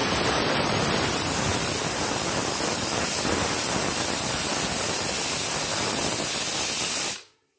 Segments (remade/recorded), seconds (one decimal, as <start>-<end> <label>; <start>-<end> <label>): 0.0-7.6 recorded